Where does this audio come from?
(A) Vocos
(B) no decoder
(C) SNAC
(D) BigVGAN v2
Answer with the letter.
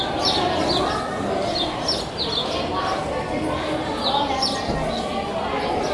B